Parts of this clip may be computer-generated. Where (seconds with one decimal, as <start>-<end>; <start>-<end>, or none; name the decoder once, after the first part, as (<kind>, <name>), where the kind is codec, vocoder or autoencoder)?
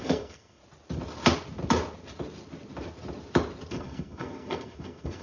0.0-0.6 (codec, SNAC); 3.7-5.2